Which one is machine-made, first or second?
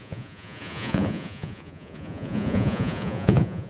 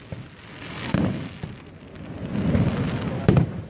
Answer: first